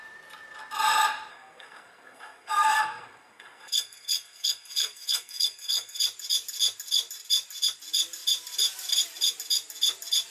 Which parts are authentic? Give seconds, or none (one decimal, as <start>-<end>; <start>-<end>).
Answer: 0.0-1.3; 6.0-10.3